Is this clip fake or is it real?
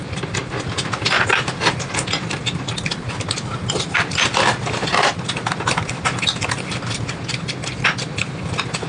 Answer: real